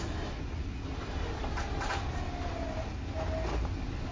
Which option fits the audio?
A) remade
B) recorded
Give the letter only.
B